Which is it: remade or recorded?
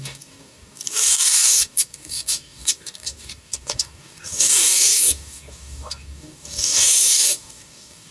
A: remade